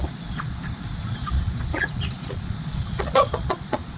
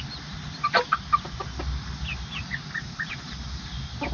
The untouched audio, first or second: second